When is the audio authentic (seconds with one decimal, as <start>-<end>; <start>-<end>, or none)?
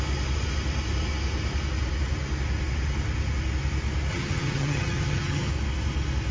0.0-4.1; 5.5-6.3